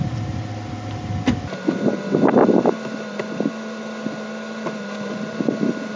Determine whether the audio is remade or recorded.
recorded